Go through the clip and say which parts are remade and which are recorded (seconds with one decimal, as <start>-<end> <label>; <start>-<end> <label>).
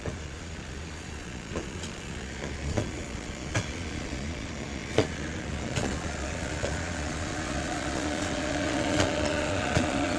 0.0-10.2 remade